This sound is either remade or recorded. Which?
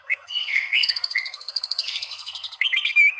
remade